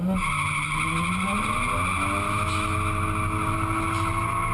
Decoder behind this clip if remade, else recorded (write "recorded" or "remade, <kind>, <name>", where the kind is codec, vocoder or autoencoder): recorded